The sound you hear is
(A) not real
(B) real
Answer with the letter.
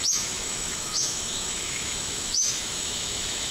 A